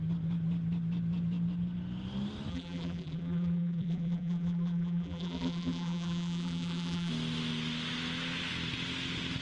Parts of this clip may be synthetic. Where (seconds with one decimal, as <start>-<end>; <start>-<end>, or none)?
2.5-7.1